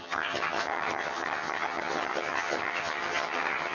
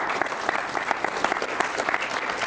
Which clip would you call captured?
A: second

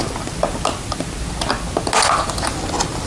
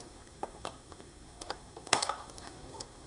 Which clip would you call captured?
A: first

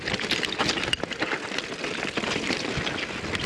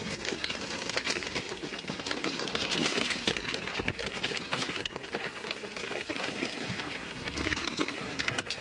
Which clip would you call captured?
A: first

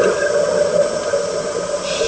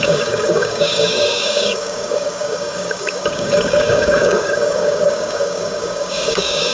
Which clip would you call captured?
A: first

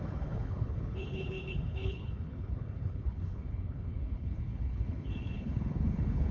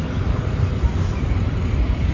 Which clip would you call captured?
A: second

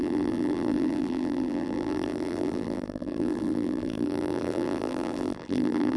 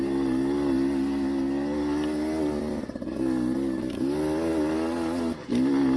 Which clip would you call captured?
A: second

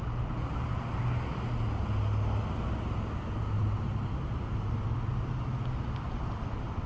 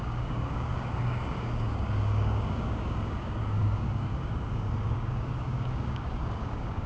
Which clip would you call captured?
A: first